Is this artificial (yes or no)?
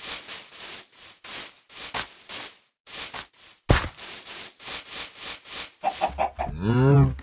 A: no